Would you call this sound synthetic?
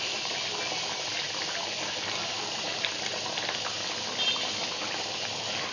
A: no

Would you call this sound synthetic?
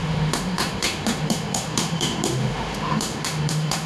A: yes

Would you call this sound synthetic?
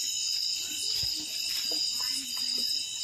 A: no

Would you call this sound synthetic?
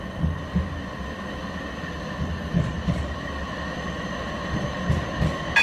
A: no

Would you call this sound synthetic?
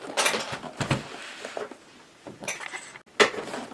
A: no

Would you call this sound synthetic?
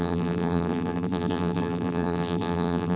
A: yes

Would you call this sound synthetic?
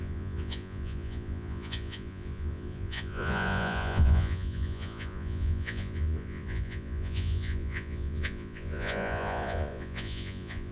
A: yes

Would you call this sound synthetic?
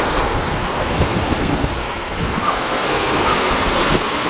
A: yes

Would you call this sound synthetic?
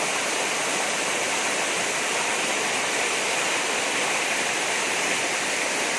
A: yes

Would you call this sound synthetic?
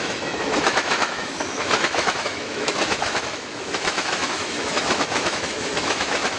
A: yes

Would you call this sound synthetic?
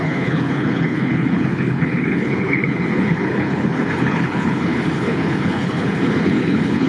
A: yes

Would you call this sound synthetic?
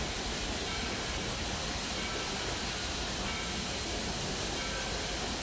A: no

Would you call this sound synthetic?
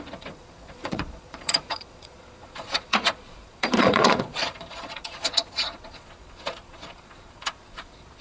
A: yes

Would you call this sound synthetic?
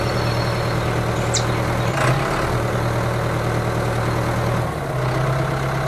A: no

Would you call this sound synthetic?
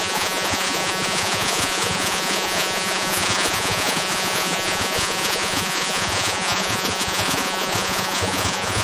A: yes